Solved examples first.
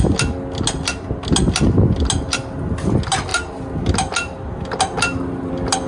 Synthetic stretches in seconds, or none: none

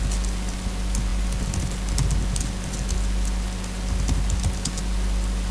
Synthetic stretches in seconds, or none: none

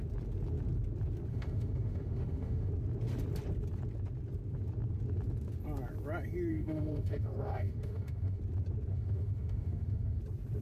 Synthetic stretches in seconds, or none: 1.3-2.7 (autoencoder, DAC-VAE); 6.5-8.4; 8.9-10.2

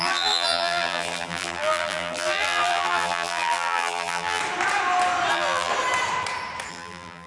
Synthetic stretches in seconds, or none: 0.0-4.4 (vocoder, BigVGAN v2); 5.3-5.7; 6.7-7.3

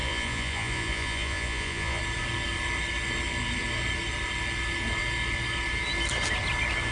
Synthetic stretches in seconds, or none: 0.0-2.0 (vocoder, Vocos)

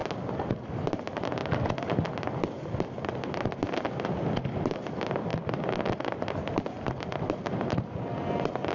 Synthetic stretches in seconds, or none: none